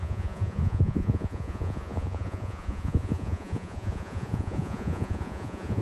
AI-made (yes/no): yes